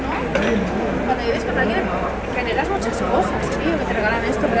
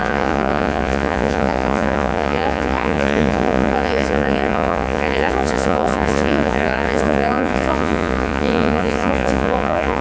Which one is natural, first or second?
first